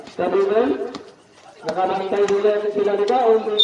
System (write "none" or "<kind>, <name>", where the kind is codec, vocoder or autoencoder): vocoder, Vocos